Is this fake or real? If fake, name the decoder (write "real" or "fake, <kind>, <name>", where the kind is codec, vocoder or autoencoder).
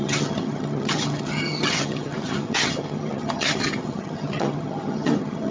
fake, vocoder, HiFi-GAN